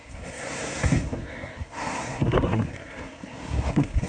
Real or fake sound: fake